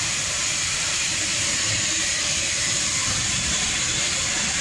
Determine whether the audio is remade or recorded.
remade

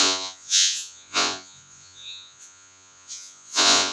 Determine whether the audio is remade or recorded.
remade